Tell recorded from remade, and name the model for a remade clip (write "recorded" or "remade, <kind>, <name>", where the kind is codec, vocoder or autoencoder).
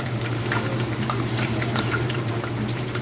remade, vocoder, BigVGAN v2